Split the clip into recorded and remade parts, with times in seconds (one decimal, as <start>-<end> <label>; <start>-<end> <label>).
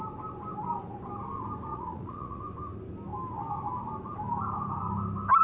0.0-1.7 recorded; 1.7-2.4 remade; 2.4-5.4 recorded